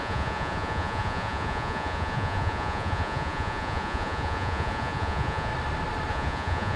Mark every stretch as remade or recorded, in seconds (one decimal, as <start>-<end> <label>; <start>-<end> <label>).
0.0-5.5 remade; 5.5-6.1 recorded; 6.1-6.8 remade